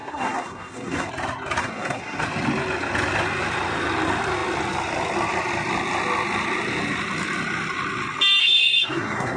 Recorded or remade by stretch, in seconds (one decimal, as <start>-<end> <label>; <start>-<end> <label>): 0.0-1.1 remade; 1.1-1.6 recorded; 1.6-2.2 remade; 2.2-8.4 recorded; 8.4-9.4 remade